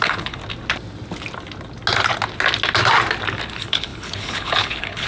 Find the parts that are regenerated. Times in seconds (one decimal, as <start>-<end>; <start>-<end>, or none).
0.0-0.4; 3.5-5.1